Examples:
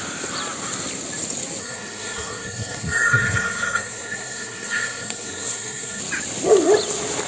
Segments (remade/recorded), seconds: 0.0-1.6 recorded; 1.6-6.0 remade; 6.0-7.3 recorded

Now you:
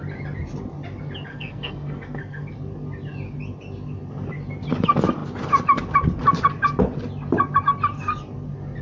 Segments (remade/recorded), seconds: 0.0-1.3 recorded; 1.3-2.5 remade; 2.5-8.8 recorded